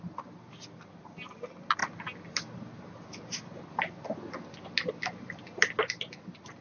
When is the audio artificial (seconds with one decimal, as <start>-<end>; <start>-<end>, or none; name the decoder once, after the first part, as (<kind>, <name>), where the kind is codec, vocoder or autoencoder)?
none